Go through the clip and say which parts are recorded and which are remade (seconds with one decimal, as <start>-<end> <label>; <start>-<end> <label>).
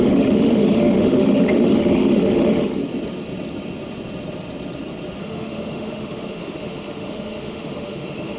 0.0-2.8 remade; 2.8-5.2 recorded; 5.2-8.4 remade